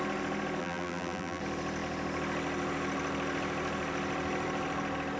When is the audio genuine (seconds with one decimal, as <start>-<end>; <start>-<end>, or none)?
0.0-0.6; 1.4-5.2